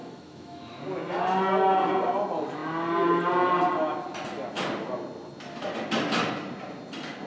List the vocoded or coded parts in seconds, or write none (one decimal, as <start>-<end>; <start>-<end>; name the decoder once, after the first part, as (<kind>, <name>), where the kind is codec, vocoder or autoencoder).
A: 0.0-0.8 (autoencoder, DAC-VAE)

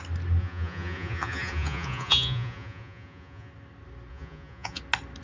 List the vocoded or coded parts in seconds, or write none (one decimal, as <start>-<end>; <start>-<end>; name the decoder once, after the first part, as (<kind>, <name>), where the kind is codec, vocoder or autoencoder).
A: 0.4-3.5 (vocoder, Vocos); 4.1-4.8

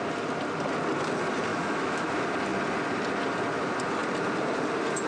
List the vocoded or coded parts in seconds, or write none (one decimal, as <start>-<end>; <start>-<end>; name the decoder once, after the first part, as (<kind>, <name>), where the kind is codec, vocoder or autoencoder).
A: 1.5-2.1 (autoencoder, DAC-VAE)